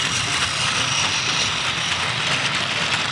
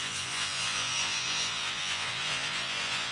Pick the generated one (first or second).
second